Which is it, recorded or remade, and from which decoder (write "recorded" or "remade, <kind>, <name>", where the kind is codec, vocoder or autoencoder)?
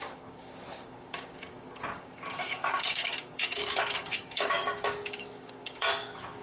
remade, codec, DAC